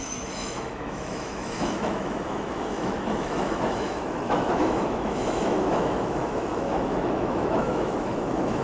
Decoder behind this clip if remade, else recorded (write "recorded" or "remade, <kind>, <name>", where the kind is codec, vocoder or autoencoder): remade, autoencoder, DAC-VAE